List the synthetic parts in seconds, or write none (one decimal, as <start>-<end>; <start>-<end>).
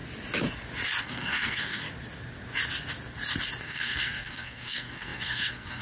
1.0-1.8; 3.6-5.8